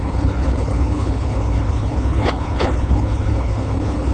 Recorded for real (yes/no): no